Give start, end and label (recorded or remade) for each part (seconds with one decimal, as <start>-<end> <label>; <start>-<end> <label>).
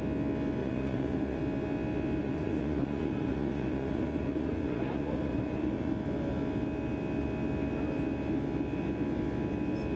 0.0-0.6 recorded; 0.6-1.4 remade; 1.4-2.2 recorded; 2.2-5.9 remade; 5.9-10.0 recorded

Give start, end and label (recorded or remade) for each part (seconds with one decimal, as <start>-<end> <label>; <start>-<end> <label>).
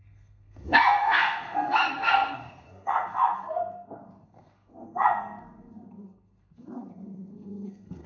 0.0-8.1 remade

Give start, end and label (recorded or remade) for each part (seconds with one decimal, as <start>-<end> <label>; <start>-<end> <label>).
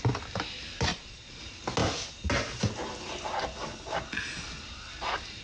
0.0-0.9 recorded; 0.9-1.4 remade; 1.4-5.4 recorded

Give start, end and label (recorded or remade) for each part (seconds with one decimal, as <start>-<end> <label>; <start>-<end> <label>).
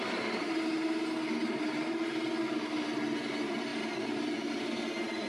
0.0-1.3 recorded; 1.3-2.2 remade; 2.2-3.7 recorded; 3.7-4.3 remade; 4.3-5.3 recorded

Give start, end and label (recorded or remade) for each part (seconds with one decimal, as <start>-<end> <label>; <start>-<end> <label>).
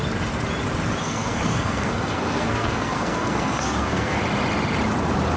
0.0-1.0 recorded; 1.0-4.2 remade; 4.2-5.4 recorded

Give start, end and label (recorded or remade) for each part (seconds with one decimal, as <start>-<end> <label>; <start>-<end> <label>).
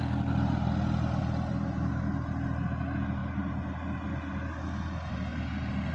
0.0-5.9 recorded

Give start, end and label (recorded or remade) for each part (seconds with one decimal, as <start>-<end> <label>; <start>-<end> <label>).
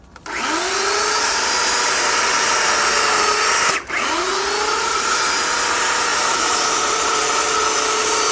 0.0-6.1 recorded; 6.1-7.2 remade; 7.2-8.3 recorded